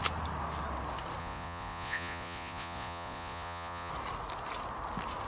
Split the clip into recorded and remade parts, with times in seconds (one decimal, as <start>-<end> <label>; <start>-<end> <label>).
0.0-1.2 recorded; 1.2-3.9 remade; 3.9-5.3 recorded